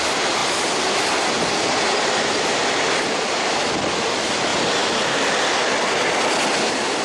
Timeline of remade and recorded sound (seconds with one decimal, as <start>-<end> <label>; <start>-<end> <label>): 0.0-0.4 remade; 0.4-1.8 recorded; 1.8-4.5 remade; 4.5-5.7 recorded; 5.7-7.0 remade